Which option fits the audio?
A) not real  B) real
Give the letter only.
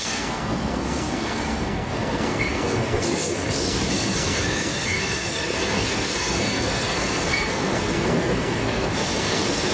A